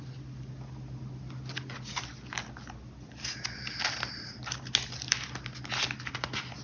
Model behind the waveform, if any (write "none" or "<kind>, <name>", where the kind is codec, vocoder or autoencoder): none